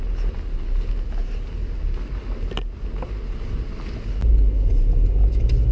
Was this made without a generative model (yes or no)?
yes